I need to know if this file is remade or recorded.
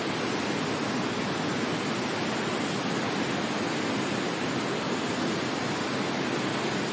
recorded